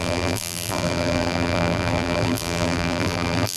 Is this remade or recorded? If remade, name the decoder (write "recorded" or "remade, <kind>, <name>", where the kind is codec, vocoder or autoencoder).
remade, vocoder, BigVGAN v2